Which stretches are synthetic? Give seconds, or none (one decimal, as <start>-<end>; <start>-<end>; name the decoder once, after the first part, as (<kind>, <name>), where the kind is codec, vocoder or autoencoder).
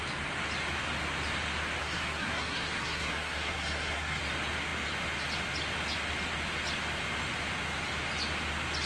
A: 1.8-4.2 (codec, SNAC)